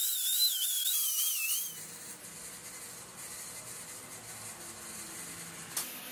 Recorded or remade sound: recorded